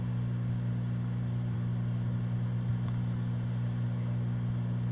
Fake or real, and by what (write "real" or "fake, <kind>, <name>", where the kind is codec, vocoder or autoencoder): real